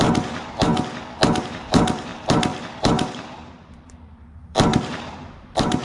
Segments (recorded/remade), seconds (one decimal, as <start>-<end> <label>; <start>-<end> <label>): 0.0-0.7 remade; 0.7-1.4 recorded; 1.4-5.8 remade

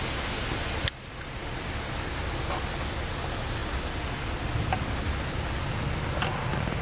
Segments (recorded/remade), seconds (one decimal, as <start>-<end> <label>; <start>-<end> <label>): 0.0-6.8 recorded

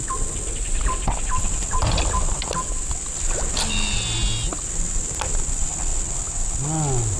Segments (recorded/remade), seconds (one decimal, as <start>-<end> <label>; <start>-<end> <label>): 0.0-7.2 recorded

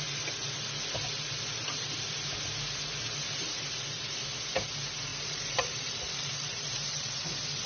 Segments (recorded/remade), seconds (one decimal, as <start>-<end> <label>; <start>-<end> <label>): 0.0-5.1 recorded; 5.1-7.3 remade; 7.3-7.7 recorded